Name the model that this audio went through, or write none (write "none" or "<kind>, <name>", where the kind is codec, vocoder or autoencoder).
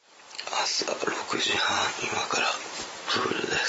none